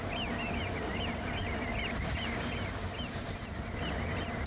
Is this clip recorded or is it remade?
remade